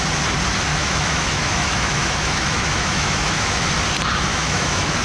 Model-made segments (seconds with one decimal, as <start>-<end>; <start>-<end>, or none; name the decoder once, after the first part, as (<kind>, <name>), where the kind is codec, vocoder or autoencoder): 0.7-3.7 (autoencoder, DAC-VAE); 4.3-5.0